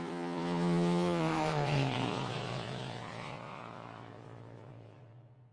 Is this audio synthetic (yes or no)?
yes